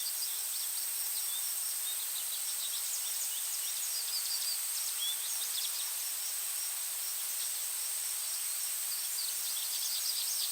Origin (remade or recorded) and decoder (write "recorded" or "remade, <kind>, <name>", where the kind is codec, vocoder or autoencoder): recorded